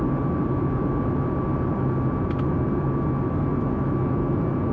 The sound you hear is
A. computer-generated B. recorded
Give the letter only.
B